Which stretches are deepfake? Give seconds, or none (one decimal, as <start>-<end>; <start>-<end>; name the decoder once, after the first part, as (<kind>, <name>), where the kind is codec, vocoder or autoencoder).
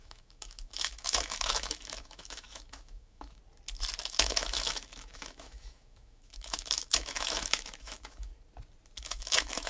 0.0-3.4 (autoencoder, DAC-VAE); 4.0-8.3; 9.0-9.7